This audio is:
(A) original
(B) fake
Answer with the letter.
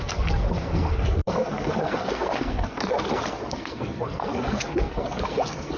B